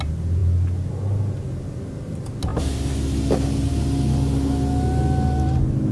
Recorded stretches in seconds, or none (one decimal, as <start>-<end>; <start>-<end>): 0.0-5.9